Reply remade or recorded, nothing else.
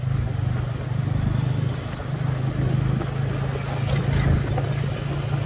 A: recorded